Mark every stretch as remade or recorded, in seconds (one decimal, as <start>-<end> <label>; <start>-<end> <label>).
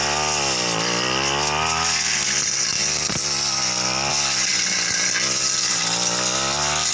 0.0-6.9 recorded